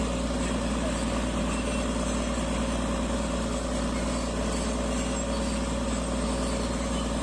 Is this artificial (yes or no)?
no